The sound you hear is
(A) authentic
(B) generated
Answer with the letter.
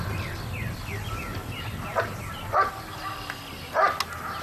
A